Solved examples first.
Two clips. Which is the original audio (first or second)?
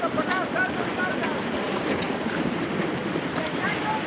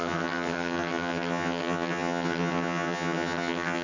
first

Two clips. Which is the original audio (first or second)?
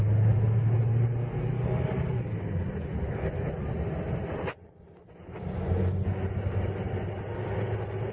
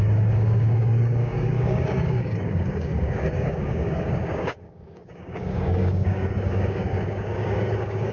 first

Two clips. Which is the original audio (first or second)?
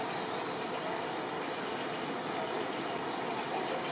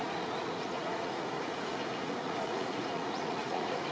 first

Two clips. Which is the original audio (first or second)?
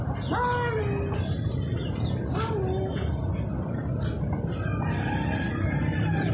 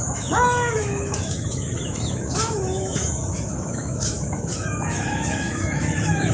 first